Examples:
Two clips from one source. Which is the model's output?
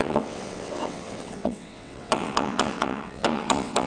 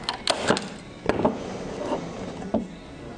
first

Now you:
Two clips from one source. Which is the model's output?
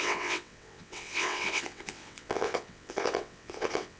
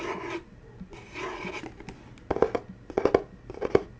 first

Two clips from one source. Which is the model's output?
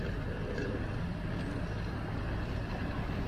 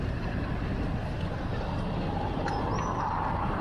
second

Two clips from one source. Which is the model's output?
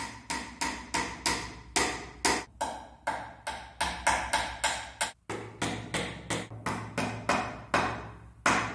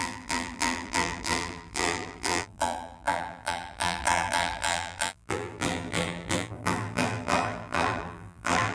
second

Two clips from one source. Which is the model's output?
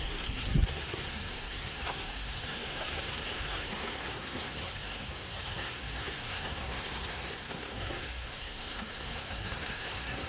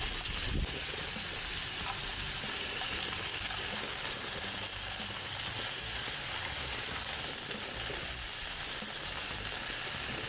first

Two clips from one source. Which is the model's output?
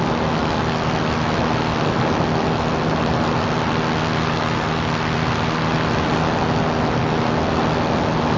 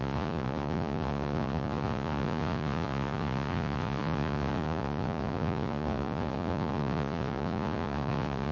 second